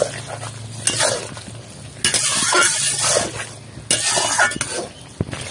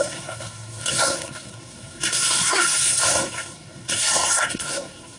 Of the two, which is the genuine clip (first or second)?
first